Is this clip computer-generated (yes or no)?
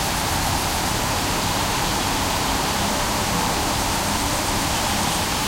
yes